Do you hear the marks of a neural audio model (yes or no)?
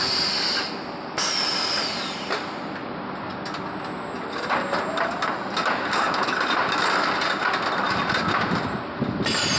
no